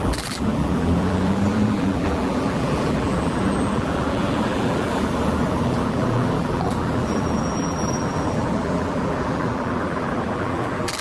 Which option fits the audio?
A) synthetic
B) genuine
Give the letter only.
A